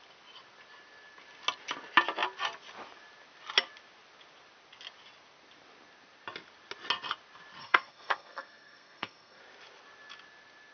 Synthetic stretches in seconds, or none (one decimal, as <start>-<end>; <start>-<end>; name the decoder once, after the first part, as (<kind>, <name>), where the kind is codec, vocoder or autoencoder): 7.6-9.4 (codec, SNAC)